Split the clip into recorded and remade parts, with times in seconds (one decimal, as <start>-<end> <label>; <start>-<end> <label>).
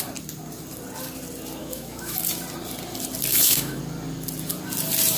0.0-1.6 recorded; 1.6-2.2 remade; 2.2-3.3 recorded; 3.3-3.8 remade; 3.8-5.2 recorded